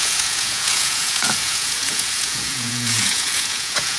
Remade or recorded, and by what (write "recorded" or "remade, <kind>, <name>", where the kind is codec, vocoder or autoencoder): remade, vocoder, Vocos